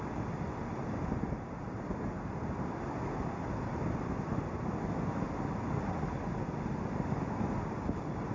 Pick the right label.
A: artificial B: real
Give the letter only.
B